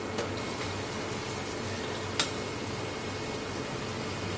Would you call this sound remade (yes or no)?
no